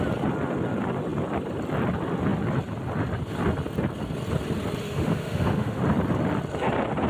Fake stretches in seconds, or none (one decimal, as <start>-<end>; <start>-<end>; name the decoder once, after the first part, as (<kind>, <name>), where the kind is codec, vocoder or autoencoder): 4.8-5.8 (autoencoder, DAC-VAE)